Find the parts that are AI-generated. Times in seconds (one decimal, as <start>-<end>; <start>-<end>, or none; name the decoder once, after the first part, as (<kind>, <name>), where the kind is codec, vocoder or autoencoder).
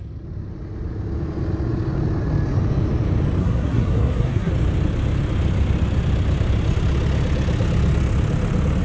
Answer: 3.4-4.5 (codec, SNAC)